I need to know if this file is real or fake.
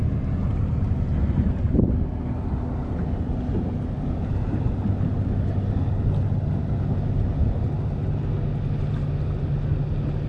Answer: real